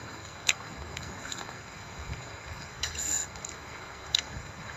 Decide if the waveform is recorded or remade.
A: remade